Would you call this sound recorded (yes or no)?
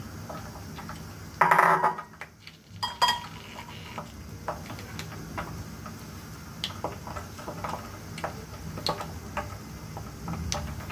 yes